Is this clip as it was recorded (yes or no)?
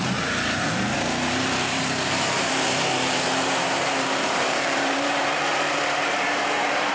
no